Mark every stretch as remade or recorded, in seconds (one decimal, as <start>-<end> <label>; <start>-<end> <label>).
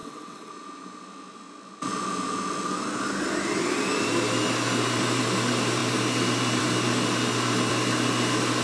0.0-0.5 remade; 0.5-8.6 recorded